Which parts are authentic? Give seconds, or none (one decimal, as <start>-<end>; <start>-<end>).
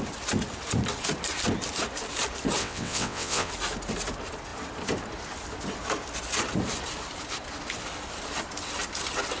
0.0-2.6; 3.5-9.4